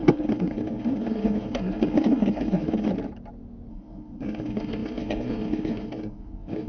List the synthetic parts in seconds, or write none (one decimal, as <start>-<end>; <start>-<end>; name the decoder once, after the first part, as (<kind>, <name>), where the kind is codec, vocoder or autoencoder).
0.0-2.9 (codec, SNAC); 3.7-6.7